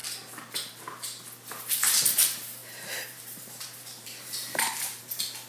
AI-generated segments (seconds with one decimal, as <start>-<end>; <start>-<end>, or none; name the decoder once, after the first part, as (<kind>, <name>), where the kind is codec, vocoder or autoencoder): 2.6-5.0 (vocoder, BigVGAN v2)